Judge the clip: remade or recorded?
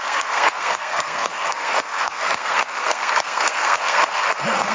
remade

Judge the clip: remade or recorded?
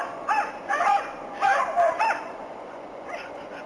remade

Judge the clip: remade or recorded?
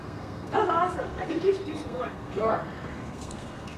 remade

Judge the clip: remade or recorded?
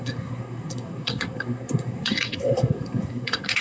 remade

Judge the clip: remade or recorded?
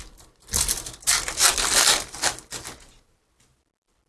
recorded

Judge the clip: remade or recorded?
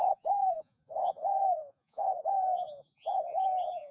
remade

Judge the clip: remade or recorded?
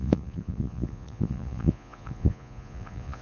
remade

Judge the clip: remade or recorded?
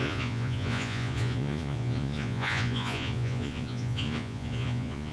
remade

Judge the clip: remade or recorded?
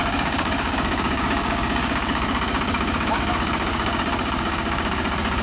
remade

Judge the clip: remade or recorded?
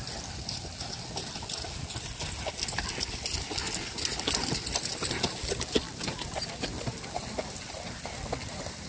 recorded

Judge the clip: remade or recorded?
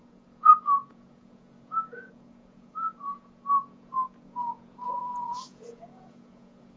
remade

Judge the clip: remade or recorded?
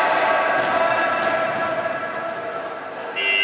recorded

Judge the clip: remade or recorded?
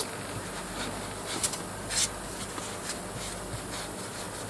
recorded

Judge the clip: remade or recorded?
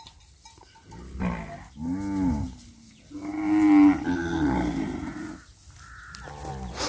recorded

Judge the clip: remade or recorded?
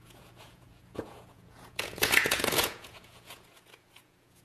remade